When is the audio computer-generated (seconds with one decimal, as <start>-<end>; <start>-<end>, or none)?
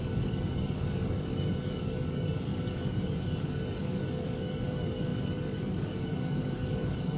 0.0-7.2